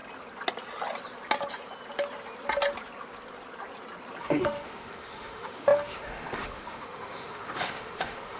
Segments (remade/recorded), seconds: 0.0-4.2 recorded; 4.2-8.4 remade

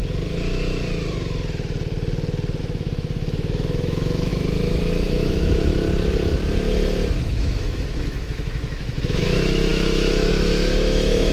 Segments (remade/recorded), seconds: 0.0-2.6 recorded; 2.6-5.7 remade; 5.7-7.2 recorded; 7.2-11.3 remade